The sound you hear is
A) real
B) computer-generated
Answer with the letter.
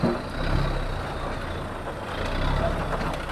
A